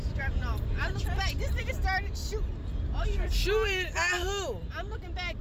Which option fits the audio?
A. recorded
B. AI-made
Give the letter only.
A